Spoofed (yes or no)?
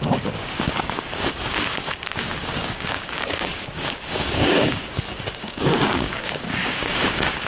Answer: yes